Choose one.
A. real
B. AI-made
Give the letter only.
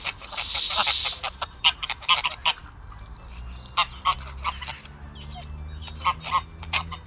A